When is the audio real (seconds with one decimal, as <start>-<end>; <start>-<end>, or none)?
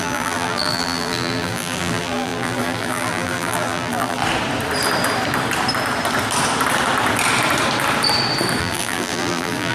4.2-8.6